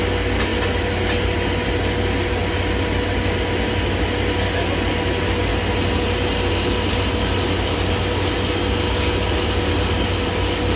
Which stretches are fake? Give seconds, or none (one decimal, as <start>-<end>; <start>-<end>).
none